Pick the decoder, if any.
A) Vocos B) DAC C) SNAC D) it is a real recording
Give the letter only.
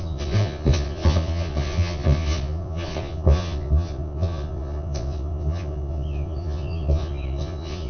A